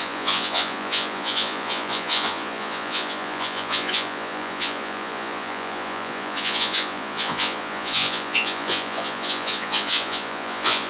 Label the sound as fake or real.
fake